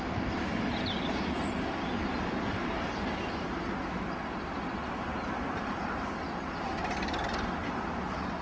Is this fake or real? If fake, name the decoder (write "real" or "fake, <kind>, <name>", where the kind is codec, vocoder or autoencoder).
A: real